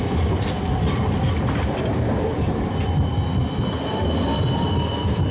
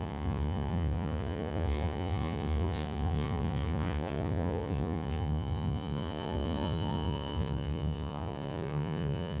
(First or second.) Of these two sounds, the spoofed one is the second